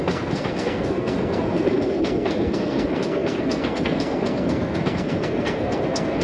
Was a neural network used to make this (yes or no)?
yes